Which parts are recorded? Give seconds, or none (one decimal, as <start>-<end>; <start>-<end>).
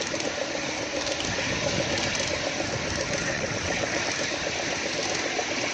0.0-3.2; 4.0-5.7